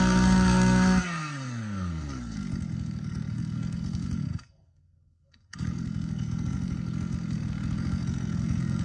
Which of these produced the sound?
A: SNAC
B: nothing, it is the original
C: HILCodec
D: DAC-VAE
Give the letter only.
A